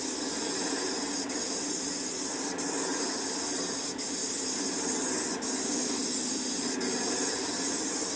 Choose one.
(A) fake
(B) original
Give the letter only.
B